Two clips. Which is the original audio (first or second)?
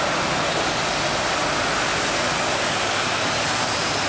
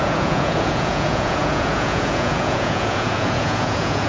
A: first